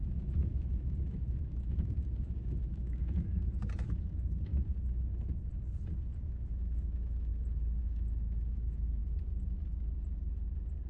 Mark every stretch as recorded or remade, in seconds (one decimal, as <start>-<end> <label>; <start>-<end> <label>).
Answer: 0.0-4.5 remade; 4.5-6.1 recorded; 6.1-7.3 remade; 7.3-7.8 recorded; 7.8-9.0 remade; 9.0-10.9 recorded